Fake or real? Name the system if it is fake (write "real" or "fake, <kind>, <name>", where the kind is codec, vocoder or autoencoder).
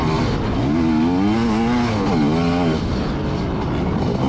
real